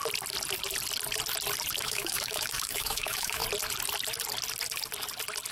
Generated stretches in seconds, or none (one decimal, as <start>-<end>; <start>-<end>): 1.8-3.4